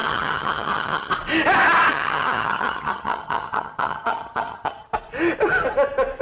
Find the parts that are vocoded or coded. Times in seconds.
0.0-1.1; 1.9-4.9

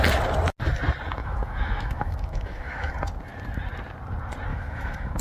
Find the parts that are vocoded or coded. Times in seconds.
1.2-2.9; 4.5-5.2

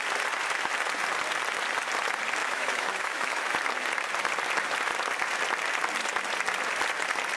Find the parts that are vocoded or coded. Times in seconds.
2.4-3.5